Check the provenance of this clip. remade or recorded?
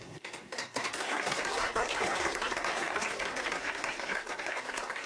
remade